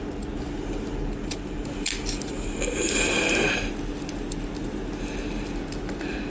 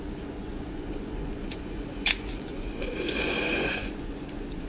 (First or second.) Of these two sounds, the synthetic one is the second